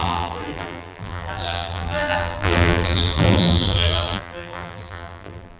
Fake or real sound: fake